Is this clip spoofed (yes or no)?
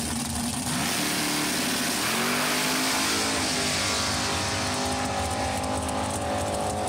no